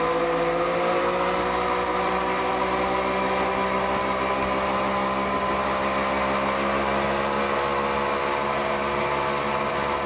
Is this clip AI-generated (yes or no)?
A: no